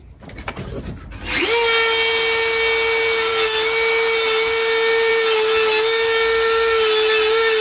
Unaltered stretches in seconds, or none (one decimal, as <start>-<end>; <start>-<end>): 0.0-7.6